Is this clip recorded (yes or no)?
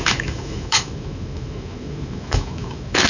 no